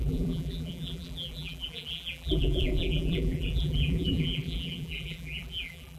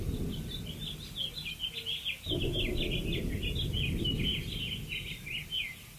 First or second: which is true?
second